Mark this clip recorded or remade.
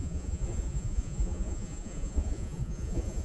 remade